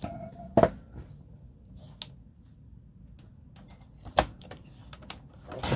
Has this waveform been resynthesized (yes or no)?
no